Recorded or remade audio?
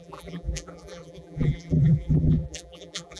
remade